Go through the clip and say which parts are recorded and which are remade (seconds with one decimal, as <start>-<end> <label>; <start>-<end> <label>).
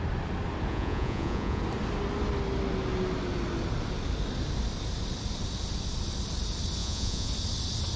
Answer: 0.0-0.7 recorded; 0.7-1.6 remade; 1.6-6.8 recorded; 6.8-7.3 remade; 7.3-8.0 recorded